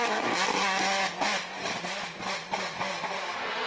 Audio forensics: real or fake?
real